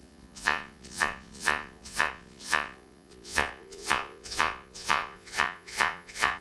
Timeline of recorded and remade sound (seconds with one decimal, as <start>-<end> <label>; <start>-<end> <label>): 0.0-6.4 remade